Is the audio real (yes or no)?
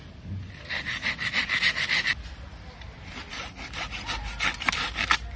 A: yes